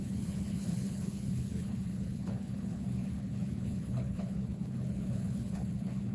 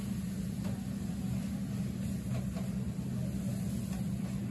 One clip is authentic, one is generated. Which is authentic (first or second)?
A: second